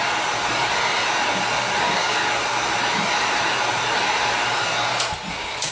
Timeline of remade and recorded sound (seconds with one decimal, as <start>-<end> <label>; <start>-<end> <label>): 0.0-1.8 recorded; 1.8-2.2 remade; 2.2-5.3 recorded; 5.3-5.7 remade